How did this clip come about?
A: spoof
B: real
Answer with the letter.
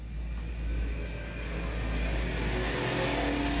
B